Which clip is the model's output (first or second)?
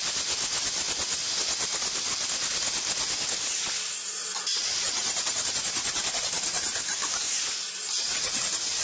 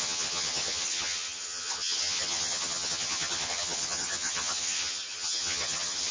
second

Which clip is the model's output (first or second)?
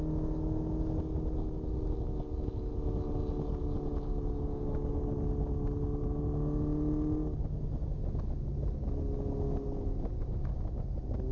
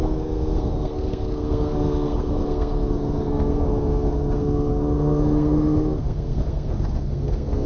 second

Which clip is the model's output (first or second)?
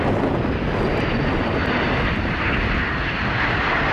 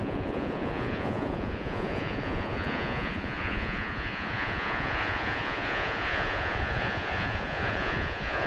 second